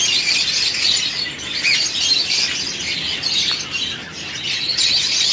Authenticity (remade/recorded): recorded